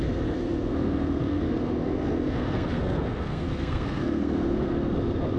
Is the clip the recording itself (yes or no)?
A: no